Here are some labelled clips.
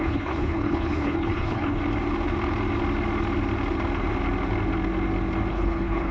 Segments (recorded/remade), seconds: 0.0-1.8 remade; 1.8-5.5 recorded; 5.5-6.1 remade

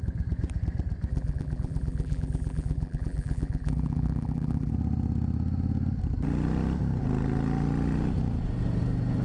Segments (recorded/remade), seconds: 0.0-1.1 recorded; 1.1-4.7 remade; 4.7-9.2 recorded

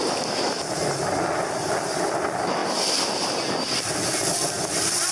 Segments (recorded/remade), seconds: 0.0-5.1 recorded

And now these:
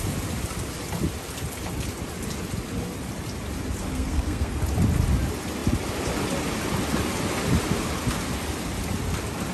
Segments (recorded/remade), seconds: 0.0-3.8 recorded; 3.8-4.6 remade; 4.6-9.5 recorded